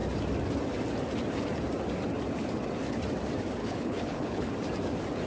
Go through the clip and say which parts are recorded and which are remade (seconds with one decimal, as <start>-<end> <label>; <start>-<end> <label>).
0.0-3.6 recorded; 3.6-4.5 remade; 4.5-5.3 recorded